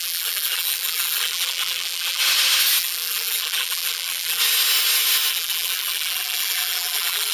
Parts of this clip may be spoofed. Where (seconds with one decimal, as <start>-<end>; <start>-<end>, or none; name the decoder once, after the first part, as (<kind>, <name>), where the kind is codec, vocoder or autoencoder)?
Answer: 0.0-2.2 (vocoder, BigVGAN v2); 2.8-4.4; 5.3-7.3

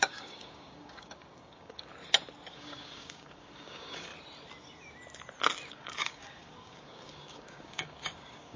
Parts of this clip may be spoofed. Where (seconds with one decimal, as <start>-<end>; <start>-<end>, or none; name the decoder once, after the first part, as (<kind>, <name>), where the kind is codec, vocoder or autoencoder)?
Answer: 0.0-1.9 (codec, DAC); 2.5-4.1; 5.7-8.6

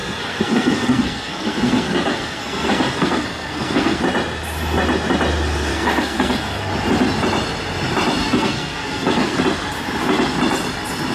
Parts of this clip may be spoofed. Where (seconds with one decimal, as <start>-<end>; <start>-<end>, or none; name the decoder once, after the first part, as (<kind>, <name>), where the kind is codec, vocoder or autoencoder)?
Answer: 0.0-4.0 (codec, SNAC); 5.7-6.7; 8.2-9.4

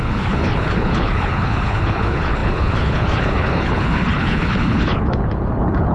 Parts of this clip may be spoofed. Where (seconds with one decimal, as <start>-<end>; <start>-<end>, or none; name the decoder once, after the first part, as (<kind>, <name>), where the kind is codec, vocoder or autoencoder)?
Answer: 0.0-5.9 (codec, HILCodec)

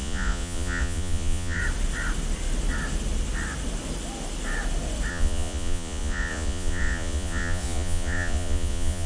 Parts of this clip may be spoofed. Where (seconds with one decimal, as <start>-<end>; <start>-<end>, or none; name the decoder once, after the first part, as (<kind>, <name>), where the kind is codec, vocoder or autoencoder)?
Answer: 0.0-1.6 (vocoder, Vocos); 5.1-9.1

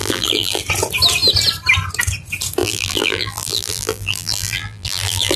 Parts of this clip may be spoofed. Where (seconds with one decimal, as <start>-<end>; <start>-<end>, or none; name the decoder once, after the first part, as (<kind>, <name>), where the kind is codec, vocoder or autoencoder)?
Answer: 0.0-0.6 (vocoder, BigVGAN v2); 2.6-5.4

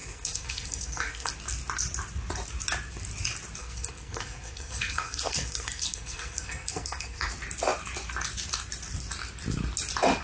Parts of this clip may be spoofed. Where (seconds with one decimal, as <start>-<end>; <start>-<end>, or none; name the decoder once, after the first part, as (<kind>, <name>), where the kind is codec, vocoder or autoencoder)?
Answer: 0.0-1.3 (codec, SNAC); 3.6-7.3

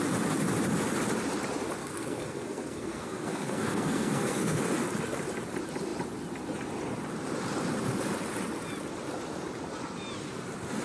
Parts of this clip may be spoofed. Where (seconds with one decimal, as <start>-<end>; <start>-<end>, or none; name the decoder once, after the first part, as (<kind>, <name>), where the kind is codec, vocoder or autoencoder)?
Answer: 1.8-4.6 (codec, SNAC)